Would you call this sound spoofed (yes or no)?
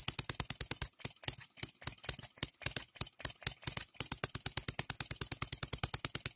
no